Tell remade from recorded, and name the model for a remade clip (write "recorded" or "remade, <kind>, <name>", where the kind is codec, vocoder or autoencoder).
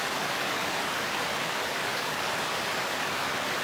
remade, codec, DAC